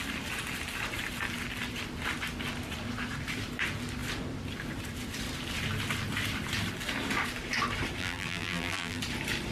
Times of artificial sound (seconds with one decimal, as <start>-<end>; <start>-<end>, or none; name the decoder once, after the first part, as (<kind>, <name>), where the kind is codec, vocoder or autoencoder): 8.0-9.0 (vocoder, BigVGAN v2)